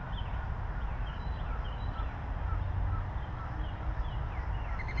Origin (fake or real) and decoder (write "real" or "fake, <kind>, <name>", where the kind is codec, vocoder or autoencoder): real